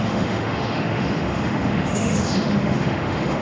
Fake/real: fake